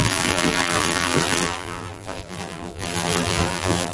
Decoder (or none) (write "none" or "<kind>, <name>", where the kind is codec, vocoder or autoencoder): vocoder, BigVGAN v2